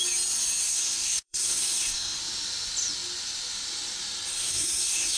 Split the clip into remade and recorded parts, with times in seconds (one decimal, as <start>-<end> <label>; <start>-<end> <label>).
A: 0.0-0.6 recorded; 0.6-2.2 remade; 2.2-4.3 recorded; 4.3-5.2 remade